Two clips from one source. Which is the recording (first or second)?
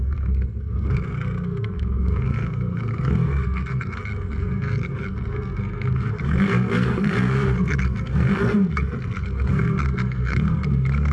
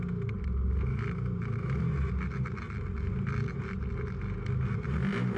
second